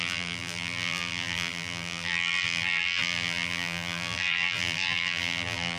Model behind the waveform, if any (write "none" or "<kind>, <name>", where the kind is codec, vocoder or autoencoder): vocoder, BigVGAN v2